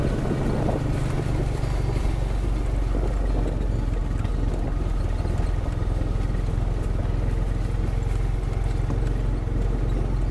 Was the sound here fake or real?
real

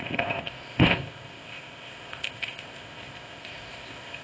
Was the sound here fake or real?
fake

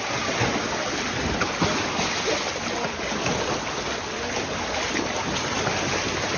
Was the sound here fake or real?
real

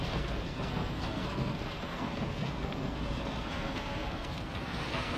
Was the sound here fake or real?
fake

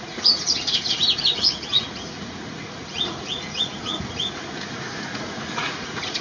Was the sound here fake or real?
fake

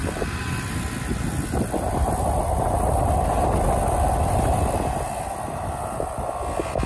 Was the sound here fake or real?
real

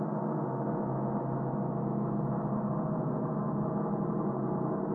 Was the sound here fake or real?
real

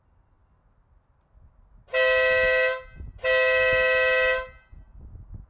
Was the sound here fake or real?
real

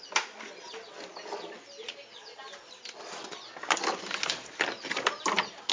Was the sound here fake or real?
real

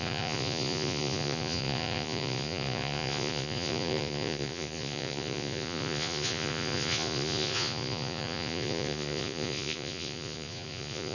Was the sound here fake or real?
fake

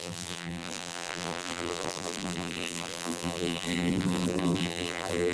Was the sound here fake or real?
fake